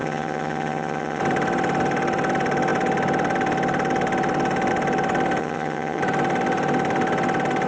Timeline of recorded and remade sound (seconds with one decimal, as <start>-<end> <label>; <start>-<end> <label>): 0.0-1.2 remade; 1.2-5.4 recorded; 5.4-6.0 remade; 6.0-7.7 recorded